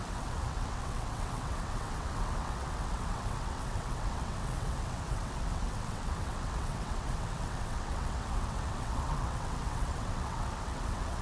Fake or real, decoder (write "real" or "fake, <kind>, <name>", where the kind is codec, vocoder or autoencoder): fake, vocoder, WaveNeXt